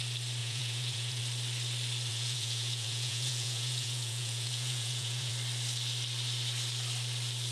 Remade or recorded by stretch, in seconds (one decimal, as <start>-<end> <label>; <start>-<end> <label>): 0.0-0.4 recorded; 0.4-1.2 remade; 1.2-2.1 recorded; 2.1-5.3 remade; 5.3-7.5 recorded